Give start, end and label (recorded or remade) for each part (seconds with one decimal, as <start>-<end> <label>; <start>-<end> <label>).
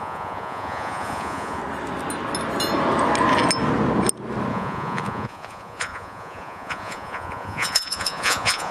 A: 0.0-1.6 remade; 1.6-4.5 recorded; 4.5-8.7 remade